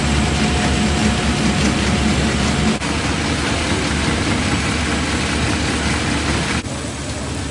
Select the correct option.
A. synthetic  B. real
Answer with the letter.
B